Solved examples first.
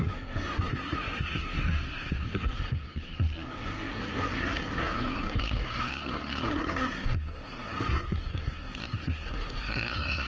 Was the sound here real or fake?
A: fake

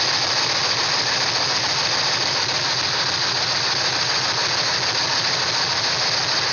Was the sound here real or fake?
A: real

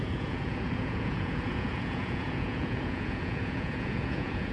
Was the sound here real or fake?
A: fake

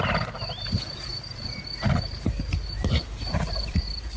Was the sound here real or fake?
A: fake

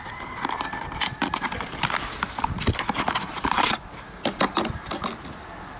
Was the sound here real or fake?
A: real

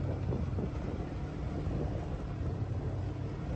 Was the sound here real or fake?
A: real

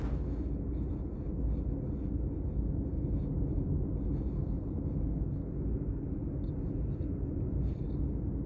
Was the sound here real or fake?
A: real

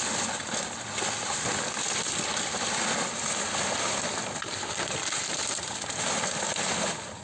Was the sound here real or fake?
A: real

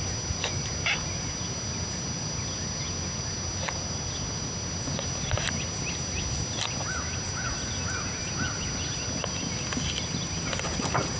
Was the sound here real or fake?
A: real